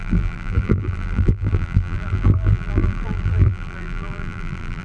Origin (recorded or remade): remade